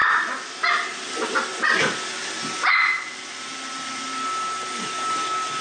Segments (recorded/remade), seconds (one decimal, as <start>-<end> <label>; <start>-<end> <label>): 0.0-5.6 recorded